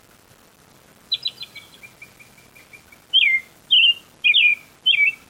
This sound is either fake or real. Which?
real